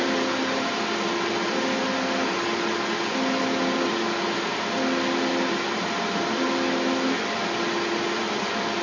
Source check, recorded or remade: recorded